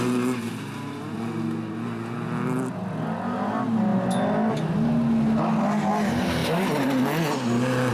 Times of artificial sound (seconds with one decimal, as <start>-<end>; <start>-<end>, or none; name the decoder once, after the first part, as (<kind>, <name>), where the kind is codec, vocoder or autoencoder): none